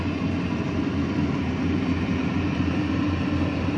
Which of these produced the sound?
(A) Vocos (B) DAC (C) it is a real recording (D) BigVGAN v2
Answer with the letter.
D